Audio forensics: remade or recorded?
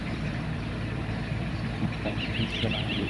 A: remade